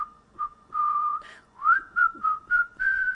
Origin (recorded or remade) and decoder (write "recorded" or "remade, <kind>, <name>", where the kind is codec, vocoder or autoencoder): remade, vocoder, Vocos